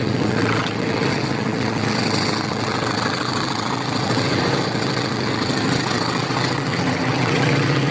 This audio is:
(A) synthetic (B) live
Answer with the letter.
A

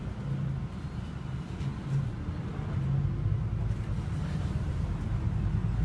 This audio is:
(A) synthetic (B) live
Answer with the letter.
B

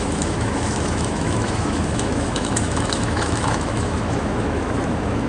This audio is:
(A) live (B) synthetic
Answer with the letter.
B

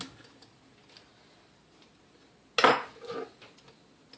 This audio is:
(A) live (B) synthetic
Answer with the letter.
A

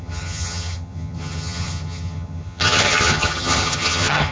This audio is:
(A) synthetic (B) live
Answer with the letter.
A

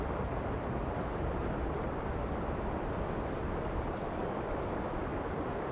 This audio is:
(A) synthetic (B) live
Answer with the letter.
B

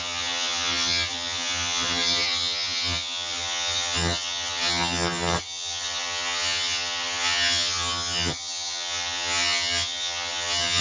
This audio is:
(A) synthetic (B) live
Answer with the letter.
A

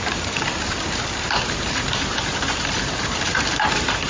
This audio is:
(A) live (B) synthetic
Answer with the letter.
B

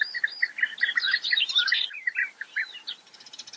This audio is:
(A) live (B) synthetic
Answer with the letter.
B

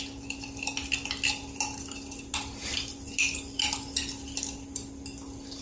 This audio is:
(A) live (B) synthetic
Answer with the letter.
A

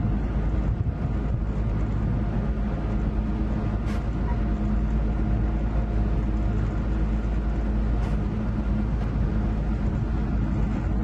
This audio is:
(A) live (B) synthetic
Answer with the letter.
A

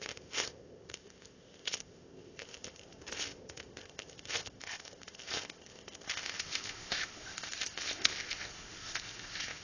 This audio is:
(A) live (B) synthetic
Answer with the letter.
B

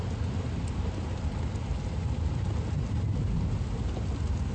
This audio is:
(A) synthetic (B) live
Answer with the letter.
B